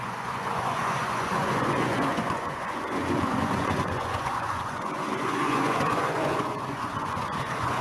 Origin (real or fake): fake